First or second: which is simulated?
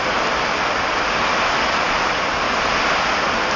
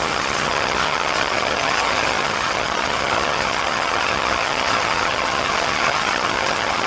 second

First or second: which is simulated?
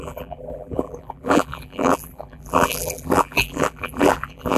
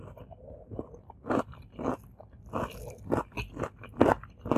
first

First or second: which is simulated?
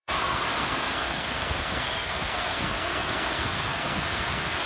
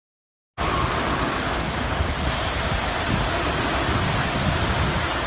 first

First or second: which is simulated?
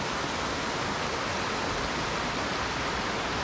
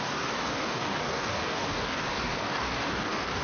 second